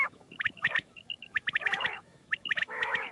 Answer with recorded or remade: remade